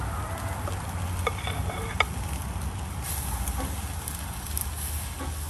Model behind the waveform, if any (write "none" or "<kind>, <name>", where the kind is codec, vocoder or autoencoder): none